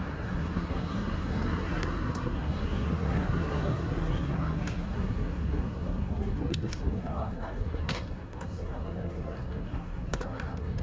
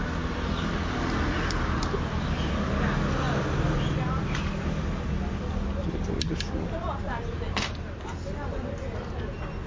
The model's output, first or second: first